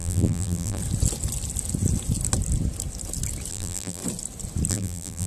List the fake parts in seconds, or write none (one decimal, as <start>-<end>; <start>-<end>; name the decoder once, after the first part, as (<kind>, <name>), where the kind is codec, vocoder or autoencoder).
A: 0.0-0.8 (vocoder, BigVGAN v2); 3.5-4.0; 4.7-5.3